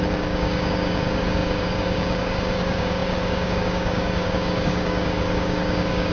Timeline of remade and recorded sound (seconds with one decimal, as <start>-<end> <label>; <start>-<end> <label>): 0.0-6.1 remade